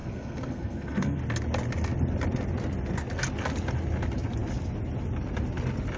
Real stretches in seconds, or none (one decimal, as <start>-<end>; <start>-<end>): 1.2-6.0

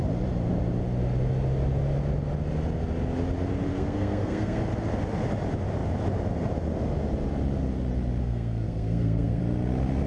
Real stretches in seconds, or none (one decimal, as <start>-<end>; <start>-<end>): 0.0-3.7; 4.6-8.2; 9.4-10.1